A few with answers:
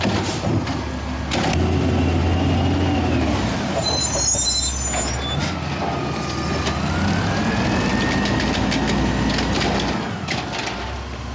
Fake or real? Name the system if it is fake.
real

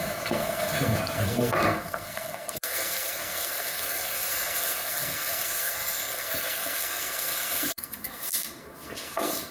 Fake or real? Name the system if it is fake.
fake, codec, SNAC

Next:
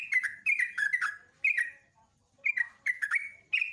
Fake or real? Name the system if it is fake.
real